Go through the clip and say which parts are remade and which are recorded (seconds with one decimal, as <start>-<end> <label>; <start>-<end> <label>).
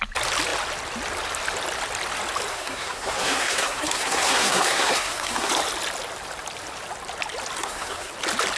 0.0-2.5 recorded; 2.5-5.5 remade; 5.5-7.6 recorded; 7.6-8.1 remade; 8.1-8.6 recorded